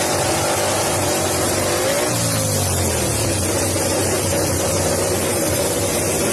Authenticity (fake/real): real